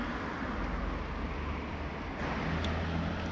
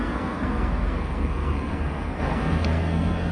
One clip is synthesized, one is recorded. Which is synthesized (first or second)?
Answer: second